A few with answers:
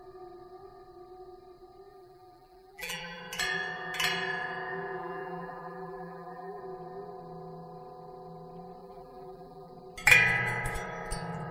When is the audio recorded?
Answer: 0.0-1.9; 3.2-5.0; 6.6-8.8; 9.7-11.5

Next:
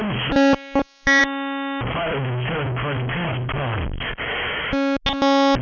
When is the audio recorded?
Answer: 0.0-5.6

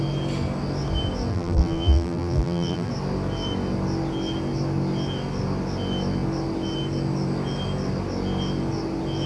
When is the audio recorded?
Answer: 0.0-1.3; 2.9-9.3

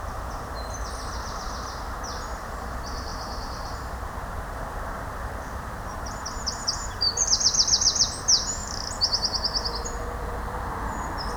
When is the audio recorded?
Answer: 8.6-11.4

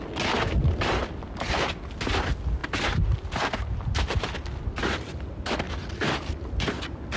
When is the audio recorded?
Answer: 0.0-1.0; 1.7-2.6; 6.7-7.2

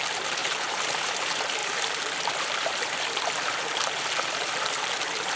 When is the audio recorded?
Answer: none

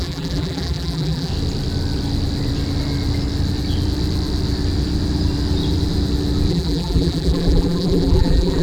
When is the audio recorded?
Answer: 1.3-6.5

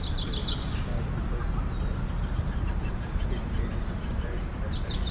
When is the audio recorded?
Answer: 0.9-2.3